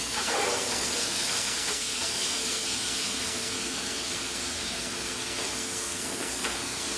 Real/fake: fake